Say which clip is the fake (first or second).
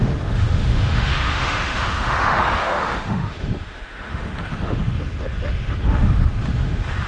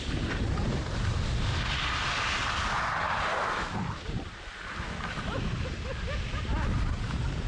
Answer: first